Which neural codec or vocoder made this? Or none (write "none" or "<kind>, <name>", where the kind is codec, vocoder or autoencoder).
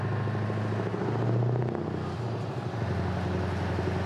none